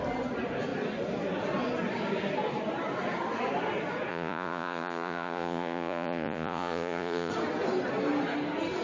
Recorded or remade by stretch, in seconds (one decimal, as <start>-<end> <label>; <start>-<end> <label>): 0.0-4.1 recorded; 4.1-7.3 remade; 7.3-8.8 recorded